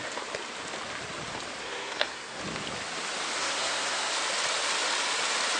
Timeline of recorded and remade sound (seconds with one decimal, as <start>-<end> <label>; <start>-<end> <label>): 0.0-1.6 recorded; 1.6-2.4 remade; 2.4-3.4 recorded; 3.4-4.1 remade; 4.1-5.6 recorded